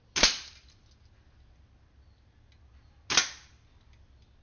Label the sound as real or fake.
real